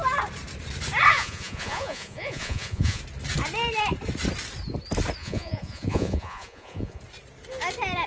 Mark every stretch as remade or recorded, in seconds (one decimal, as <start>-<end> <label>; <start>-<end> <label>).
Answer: 0.0-1.1 recorded; 1.1-3.0 remade; 3.0-5.2 recorded; 5.2-7.0 remade; 7.0-8.1 recorded